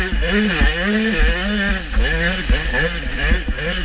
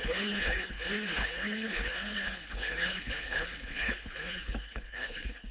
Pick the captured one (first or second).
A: first